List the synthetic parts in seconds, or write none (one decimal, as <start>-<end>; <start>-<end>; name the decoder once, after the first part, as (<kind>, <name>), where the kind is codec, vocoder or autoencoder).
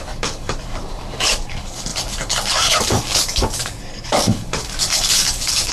0.0-5.7 (codec, DAC)